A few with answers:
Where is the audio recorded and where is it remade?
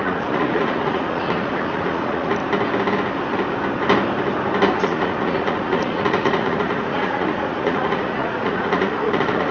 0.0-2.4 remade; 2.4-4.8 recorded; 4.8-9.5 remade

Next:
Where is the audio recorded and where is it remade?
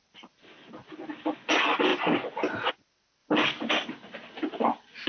0.0-5.1 recorded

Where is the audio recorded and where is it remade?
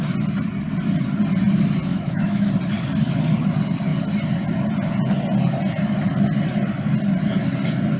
0.0-1.9 recorded; 1.9-2.5 remade; 2.5-8.0 recorded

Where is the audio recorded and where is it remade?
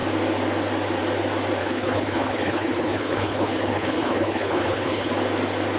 0.0-1.6 recorded; 1.6-5.1 remade; 5.1-5.8 recorded